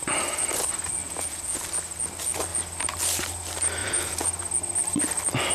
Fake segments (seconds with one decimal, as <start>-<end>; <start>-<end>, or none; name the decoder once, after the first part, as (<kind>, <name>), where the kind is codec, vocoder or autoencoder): 1.0-1.6 (vocoder, Vocos); 3.8-4.3